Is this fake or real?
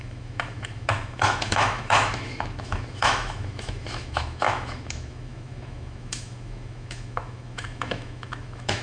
fake